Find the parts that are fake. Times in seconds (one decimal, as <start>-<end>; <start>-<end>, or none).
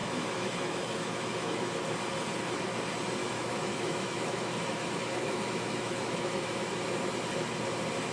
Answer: 0.0-1.8; 3.2-6.7